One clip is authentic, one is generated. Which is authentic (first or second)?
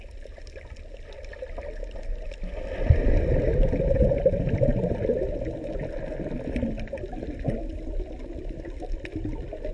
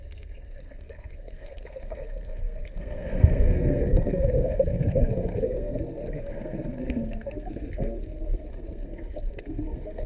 first